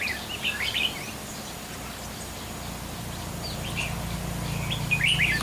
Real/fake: real